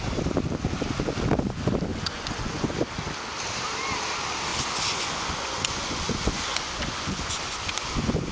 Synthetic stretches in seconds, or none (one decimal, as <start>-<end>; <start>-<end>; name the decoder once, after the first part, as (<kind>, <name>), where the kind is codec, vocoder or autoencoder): 1.9-2.7 (vocoder, Vocos); 4.5-8.3